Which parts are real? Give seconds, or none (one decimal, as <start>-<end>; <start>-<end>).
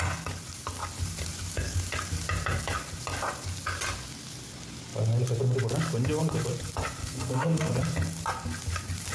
0.0-7.0; 7.7-9.1